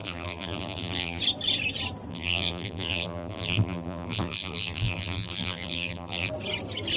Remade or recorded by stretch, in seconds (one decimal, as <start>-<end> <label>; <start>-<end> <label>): 0.0-1.2 remade; 1.2-2.1 recorded; 2.1-6.3 remade; 6.3-7.0 recorded